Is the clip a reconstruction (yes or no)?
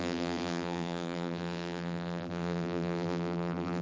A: yes